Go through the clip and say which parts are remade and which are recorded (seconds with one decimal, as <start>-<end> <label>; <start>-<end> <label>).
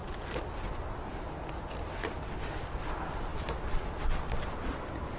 0.0-5.2 recorded